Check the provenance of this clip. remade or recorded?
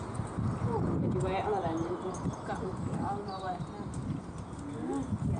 recorded